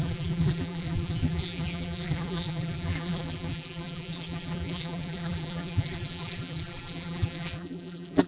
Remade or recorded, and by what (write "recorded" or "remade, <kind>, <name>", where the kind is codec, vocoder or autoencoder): remade, vocoder, BigVGAN v2